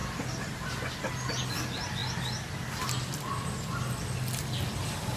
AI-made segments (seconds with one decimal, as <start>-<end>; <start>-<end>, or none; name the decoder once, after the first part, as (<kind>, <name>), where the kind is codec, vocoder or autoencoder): none